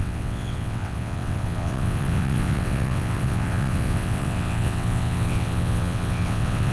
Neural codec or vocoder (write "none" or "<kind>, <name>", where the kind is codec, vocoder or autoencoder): vocoder, WaveNeXt